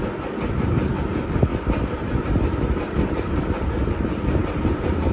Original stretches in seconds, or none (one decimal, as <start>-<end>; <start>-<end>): 0.0-5.1